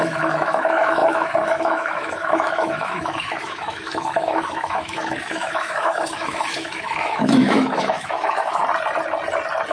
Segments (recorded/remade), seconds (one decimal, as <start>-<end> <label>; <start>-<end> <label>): 0.0-8.6 remade; 8.6-9.7 recorded

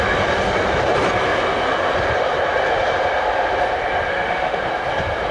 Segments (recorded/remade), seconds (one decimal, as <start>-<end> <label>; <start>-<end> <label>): 0.0-4.1 recorded; 4.1-4.7 remade; 4.7-5.3 recorded